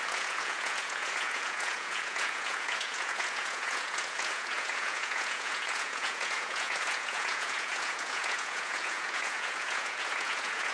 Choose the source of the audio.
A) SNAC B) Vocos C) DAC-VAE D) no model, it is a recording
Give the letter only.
B